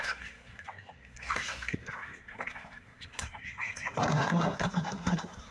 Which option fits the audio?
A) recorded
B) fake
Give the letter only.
B